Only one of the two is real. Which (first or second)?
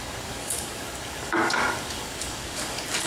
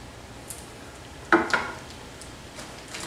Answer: second